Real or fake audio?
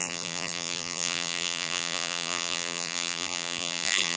fake